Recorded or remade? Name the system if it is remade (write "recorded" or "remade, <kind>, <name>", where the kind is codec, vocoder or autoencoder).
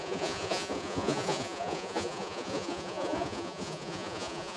remade, vocoder, Vocos